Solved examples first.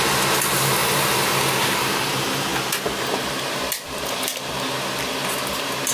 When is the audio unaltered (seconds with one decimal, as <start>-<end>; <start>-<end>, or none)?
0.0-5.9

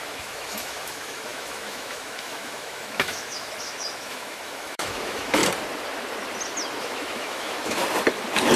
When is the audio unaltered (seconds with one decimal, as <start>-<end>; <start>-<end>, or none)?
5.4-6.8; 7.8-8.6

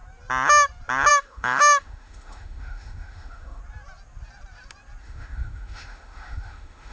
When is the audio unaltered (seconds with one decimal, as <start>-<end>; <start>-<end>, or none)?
0.0-1.1; 3.6-5.0

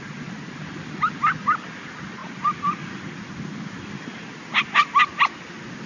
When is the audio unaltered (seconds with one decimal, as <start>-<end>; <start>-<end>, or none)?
0.0-5.9

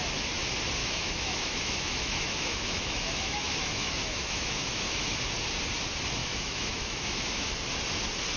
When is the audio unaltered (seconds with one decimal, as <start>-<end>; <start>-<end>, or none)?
0.0-0.8; 5.2-6.2; 7.5-8.4

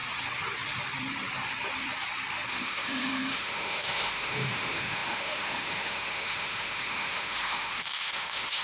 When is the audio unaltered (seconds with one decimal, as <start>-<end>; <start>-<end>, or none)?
0.0-2.5

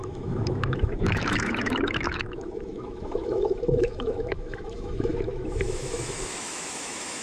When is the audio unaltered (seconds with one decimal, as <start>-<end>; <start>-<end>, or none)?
none

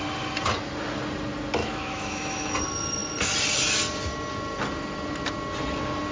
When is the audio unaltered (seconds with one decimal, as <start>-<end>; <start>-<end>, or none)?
0.0-1.6; 2.5-6.1